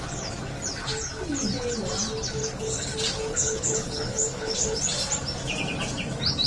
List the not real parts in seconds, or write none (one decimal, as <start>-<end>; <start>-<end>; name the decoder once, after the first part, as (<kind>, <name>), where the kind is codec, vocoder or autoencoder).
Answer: 2.4-2.9 (codec, HILCodec); 3.3-4.8